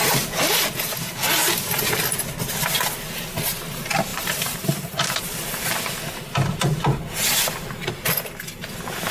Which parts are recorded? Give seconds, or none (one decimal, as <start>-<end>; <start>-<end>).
0.0-4.1; 5.8-9.1